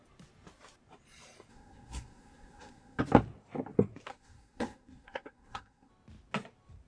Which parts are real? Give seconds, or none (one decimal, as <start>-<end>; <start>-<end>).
0.0-1.5; 3.0-4.1; 5.9-6.9